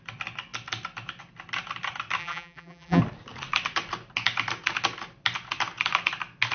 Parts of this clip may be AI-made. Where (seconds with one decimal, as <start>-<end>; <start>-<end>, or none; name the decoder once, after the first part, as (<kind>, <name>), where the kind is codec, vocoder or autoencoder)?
2.2-3.0 (vocoder, BigVGAN v2)